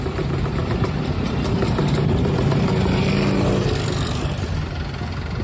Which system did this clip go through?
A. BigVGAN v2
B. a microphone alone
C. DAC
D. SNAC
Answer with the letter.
B